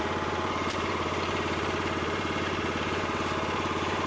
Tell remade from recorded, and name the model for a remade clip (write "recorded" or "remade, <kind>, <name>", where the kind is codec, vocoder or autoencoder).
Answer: remade, vocoder, BigVGAN v2